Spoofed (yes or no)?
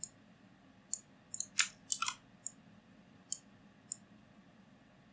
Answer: no